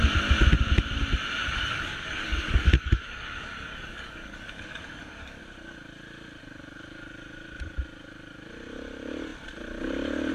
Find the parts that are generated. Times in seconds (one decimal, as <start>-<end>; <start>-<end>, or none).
1.4-5.4